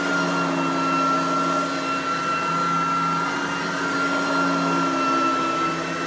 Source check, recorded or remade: recorded